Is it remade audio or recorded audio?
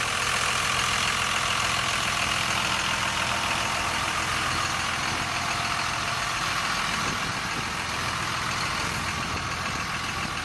recorded